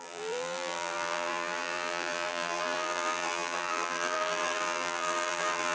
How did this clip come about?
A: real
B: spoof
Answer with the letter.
B